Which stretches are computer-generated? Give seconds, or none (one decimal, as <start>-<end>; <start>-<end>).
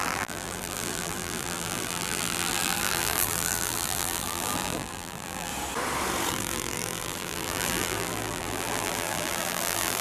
0.0-5.5; 6.3-10.0